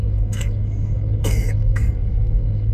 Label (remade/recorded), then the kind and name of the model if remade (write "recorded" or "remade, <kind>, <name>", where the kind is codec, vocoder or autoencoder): remade, codec, SNAC